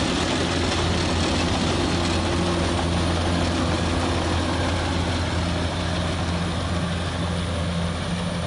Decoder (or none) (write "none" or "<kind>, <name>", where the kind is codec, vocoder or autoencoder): none